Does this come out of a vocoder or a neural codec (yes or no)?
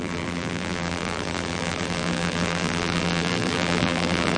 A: yes